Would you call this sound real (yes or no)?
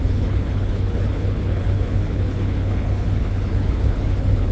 no